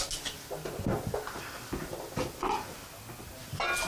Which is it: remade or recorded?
recorded